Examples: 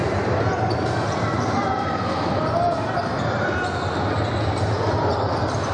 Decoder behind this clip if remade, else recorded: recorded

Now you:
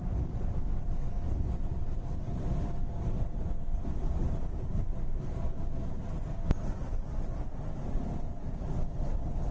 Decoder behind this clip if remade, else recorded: remade, vocoder, BigVGAN v2